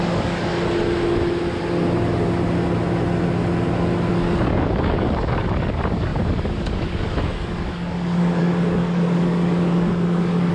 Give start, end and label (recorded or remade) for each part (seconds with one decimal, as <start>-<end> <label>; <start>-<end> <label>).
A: 0.0-0.5 remade; 0.5-4.1 recorded; 4.1-10.5 remade